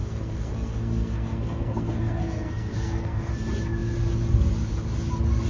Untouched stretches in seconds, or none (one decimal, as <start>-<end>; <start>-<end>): 3.3-5.5